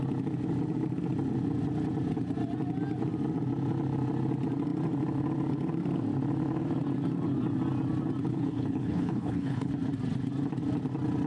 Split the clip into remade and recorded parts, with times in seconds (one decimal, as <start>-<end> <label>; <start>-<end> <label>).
0.0-8.3 recorded; 8.3-9.7 remade; 9.7-11.3 recorded